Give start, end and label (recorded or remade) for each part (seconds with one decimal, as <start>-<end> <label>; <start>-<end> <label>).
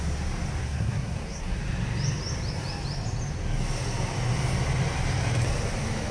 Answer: 0.0-0.6 recorded; 0.6-1.6 remade; 1.6-6.1 recorded